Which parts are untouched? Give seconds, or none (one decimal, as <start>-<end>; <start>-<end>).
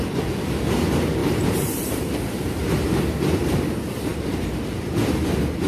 0.0-1.2; 3.0-4.1; 5.0-5.7